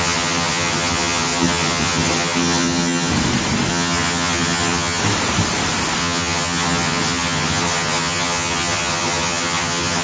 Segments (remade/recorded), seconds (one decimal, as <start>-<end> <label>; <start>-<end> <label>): 0.0-3.1 remade; 3.1-3.7 recorded; 3.7-5.0 remade; 5.0-6.0 recorded; 6.0-10.0 remade